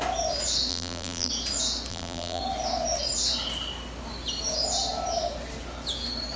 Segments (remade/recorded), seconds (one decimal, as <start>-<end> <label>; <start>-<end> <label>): 0.0-0.7 recorded; 0.7-1.3 remade; 1.3-1.9 recorded; 1.9-2.4 remade; 2.4-6.4 recorded